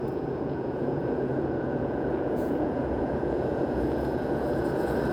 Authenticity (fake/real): fake